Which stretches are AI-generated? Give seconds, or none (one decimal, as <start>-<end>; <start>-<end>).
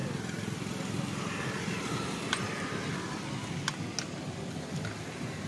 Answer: none